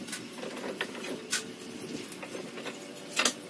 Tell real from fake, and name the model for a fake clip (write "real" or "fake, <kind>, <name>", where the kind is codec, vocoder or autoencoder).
real